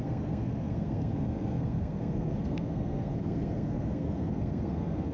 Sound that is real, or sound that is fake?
fake